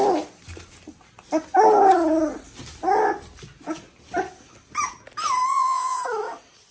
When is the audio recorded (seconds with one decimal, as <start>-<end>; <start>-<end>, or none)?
0.0-5.5; 6.0-6.7